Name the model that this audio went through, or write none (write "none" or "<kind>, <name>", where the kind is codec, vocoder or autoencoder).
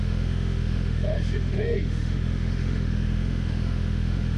autoencoder, DAC-VAE